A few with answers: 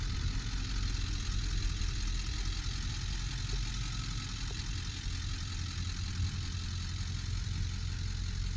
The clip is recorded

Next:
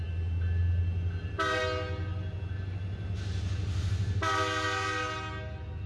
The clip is recorded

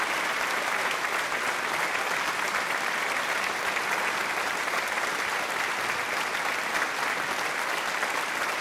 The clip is recorded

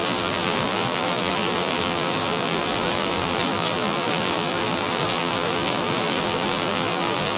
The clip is remade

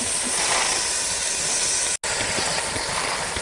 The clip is recorded